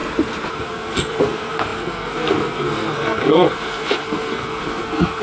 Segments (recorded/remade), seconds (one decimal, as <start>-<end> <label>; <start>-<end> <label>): 0.0-0.5 recorded; 0.5-5.2 remade